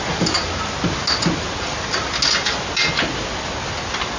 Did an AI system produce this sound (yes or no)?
no